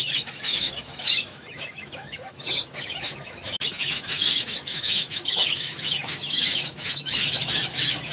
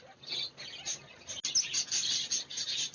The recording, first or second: second